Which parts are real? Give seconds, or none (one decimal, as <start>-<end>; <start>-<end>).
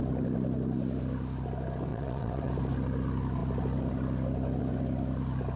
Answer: 0.0-1.9; 2.5-5.6